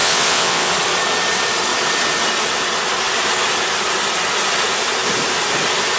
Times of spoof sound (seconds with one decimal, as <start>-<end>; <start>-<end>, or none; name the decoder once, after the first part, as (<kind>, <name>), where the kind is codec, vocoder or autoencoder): 0.0-0.7 (vocoder, WaveNeXt)